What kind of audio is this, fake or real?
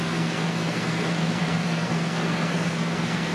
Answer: fake